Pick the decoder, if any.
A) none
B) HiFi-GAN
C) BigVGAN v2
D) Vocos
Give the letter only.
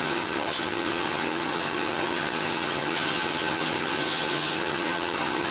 B